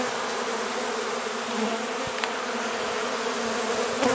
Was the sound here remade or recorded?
recorded